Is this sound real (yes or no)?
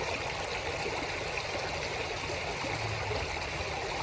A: yes